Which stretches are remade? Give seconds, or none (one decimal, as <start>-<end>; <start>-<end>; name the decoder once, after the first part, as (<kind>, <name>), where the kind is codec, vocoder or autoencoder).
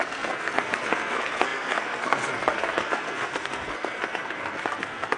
0.0-5.2 (codec, SNAC)